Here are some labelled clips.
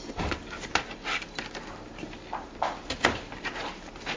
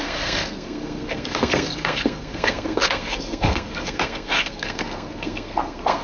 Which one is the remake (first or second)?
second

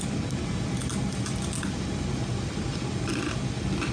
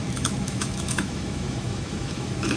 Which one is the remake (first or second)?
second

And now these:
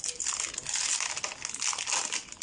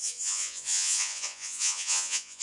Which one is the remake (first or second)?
second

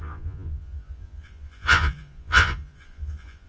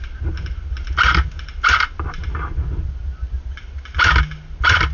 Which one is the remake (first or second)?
first